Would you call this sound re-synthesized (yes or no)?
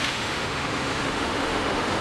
yes